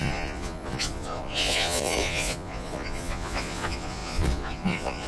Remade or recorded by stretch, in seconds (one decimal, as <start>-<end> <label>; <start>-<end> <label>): 0.0-5.1 remade